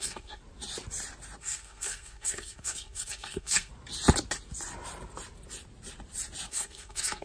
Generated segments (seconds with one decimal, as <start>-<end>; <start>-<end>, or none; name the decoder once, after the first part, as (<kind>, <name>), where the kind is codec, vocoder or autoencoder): 0.0-0.4 (codec, SNAC); 1.4-3.7; 6.5-7.2